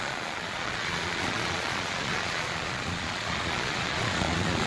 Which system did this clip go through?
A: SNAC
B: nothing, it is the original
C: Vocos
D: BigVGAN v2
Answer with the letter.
C